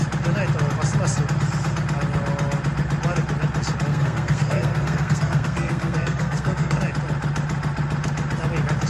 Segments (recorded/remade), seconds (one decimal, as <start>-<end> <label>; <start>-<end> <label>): 0.0-3.9 recorded; 3.9-6.8 remade; 6.8-8.9 recorded